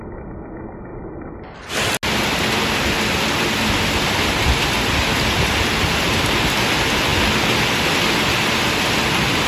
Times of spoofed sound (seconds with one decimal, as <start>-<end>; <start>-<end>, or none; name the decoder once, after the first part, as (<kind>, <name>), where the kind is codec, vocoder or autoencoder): none

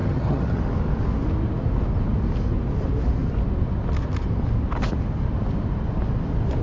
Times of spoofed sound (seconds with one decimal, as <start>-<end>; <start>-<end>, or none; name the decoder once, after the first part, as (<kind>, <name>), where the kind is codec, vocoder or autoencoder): 0.0-0.6 (vocoder, HiFi-GAN)

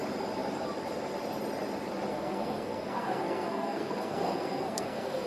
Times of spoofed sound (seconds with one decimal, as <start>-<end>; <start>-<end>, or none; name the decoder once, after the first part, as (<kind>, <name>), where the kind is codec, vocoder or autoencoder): 2.1-5.3 (codec, SNAC)

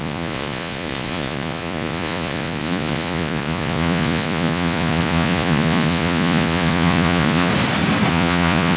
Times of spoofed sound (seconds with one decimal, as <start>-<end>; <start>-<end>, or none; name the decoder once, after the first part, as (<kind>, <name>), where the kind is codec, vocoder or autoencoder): 0.0-7.5 (vocoder, Vocos); 8.1-8.8

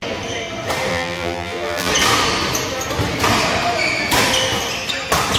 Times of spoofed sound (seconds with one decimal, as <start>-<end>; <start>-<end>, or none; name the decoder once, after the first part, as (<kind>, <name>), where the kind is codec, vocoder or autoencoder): 0.9-1.9 (vocoder, BigVGAN v2)